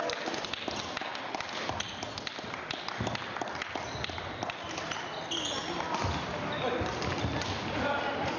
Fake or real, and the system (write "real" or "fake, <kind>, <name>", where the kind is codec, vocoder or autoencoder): real